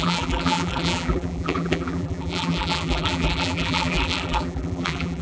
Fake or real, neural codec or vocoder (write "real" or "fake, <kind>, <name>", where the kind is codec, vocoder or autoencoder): fake, vocoder, BigVGAN v2